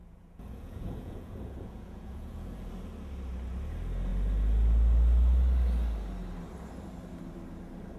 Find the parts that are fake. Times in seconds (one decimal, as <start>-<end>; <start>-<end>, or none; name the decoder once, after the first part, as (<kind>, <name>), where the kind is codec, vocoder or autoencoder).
0.0-2.7 (vocoder, Vocos)